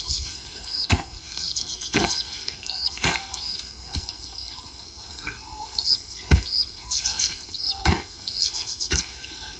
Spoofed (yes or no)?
yes